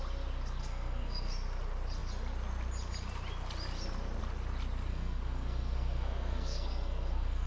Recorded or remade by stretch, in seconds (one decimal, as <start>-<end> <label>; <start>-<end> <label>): 0.0-0.6 recorded; 0.6-1.3 remade; 1.3-4.9 recorded; 4.9-7.5 remade